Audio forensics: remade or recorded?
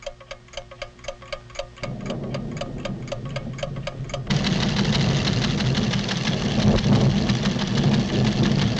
recorded